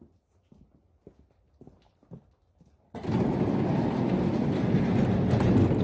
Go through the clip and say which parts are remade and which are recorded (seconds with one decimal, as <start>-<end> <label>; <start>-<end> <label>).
0.0-5.8 recorded